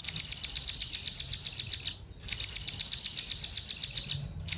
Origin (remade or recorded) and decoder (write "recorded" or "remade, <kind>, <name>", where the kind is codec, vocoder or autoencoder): recorded